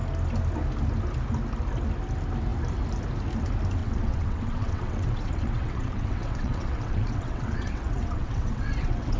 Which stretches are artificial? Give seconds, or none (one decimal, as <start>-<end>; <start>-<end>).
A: 3.8-9.2